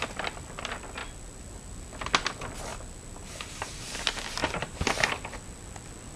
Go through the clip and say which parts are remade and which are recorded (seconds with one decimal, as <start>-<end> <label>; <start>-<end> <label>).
0.0-4.4 recorded; 4.4-5.1 remade; 5.1-6.2 recorded